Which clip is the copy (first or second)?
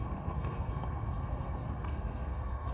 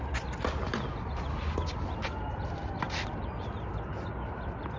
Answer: first